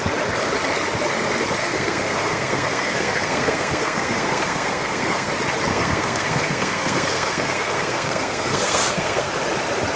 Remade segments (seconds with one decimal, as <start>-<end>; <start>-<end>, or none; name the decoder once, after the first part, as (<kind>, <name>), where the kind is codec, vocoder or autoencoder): 1.6-5.3 (codec, SNAC); 5.7-9.3